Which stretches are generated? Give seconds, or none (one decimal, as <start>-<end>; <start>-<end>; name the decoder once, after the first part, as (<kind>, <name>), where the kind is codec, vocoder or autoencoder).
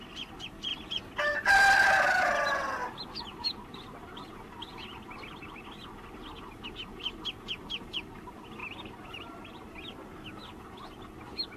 8.6-9.5 (vocoder, BigVGAN v2)